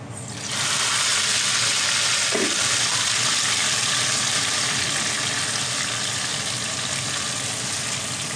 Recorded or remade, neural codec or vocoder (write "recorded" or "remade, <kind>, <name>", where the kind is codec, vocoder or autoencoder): recorded